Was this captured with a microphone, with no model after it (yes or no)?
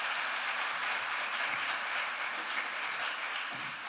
yes